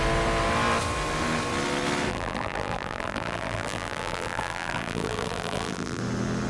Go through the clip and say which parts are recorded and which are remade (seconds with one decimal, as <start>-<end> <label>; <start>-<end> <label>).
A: 0.0-2.1 recorded; 2.1-6.0 remade; 6.0-6.5 recorded